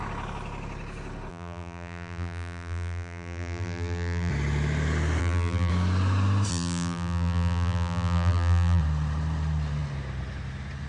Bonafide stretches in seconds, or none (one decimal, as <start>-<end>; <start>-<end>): 0.0-1.3; 4.3-5.2; 5.7-6.5; 8.8-10.9